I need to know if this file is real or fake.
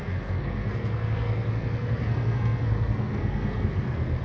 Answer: fake